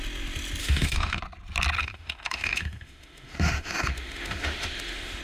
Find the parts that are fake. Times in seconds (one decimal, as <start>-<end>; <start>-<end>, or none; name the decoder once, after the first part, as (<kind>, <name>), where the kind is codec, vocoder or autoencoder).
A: 0.6-1.2 (autoencoder, DAC-VAE); 1.8-5.2